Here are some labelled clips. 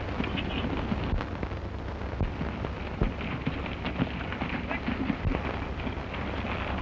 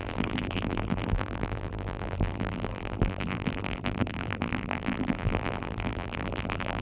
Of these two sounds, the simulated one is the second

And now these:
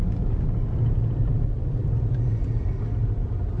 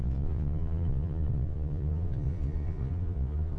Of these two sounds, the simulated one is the second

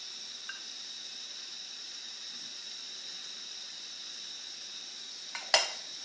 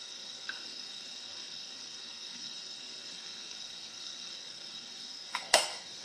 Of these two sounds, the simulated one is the second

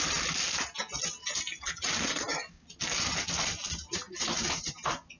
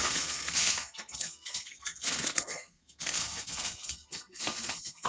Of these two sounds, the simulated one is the second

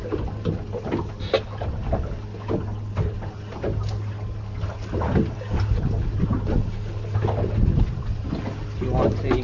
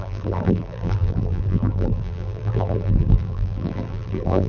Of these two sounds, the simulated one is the second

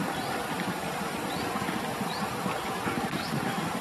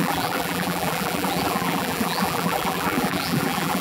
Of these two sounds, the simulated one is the second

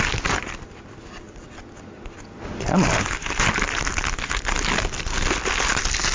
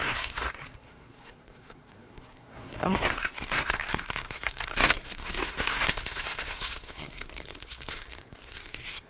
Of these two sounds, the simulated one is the second